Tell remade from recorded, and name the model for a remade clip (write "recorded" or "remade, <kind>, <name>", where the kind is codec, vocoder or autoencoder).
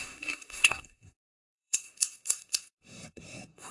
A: remade, codec, SNAC